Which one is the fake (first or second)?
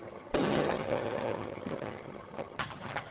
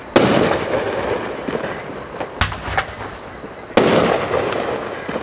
first